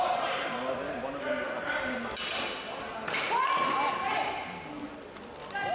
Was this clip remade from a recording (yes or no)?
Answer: no